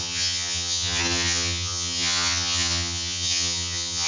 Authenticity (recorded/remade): remade